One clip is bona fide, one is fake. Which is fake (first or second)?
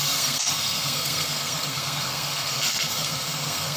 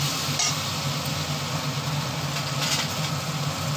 first